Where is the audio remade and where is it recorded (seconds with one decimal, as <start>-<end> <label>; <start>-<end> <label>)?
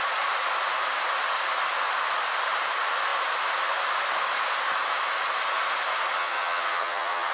0.0-6.2 recorded; 6.2-7.3 remade